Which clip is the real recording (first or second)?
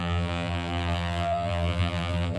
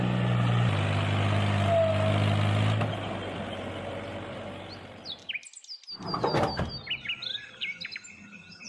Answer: second